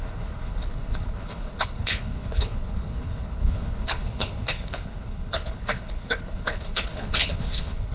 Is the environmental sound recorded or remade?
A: remade